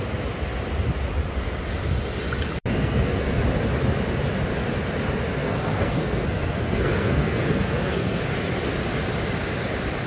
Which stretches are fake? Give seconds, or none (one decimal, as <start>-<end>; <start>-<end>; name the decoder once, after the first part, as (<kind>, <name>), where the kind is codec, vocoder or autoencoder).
2.7-3.4 (codec, SNAC); 5.4-8.2